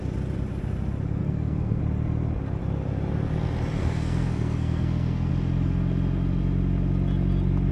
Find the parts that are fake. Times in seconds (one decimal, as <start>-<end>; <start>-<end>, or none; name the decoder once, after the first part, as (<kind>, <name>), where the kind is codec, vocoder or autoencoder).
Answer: 1.2-1.8 (codec, SNAC); 3.8-5.3

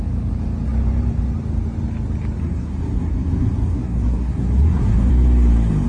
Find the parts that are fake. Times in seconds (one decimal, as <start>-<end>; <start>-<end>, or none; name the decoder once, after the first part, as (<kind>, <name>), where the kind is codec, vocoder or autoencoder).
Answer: 2.4-5.1 (codec, SNAC)

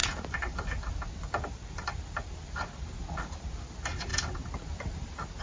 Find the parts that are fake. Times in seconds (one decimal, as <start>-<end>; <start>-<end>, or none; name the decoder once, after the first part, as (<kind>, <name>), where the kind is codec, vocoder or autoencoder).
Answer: none

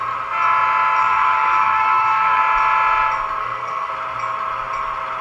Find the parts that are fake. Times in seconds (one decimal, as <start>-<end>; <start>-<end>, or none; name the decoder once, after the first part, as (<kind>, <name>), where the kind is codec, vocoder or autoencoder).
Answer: 1.0-2.4 (codec, SNAC); 3.4-3.9

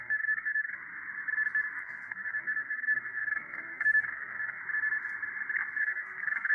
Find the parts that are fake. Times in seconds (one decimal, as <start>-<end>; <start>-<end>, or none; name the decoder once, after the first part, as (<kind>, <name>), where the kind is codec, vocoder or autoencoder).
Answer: 0.0-0.8 (codec, SNAC); 1.8-4.6; 5.8-6.5

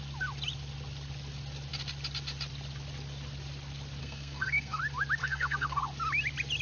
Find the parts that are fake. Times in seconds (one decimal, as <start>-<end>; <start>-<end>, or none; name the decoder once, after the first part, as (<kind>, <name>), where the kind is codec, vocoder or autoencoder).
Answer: 4.0-4.8 (codec, SNAC); 5.2-5.8